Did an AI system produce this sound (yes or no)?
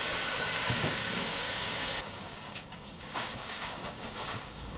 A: yes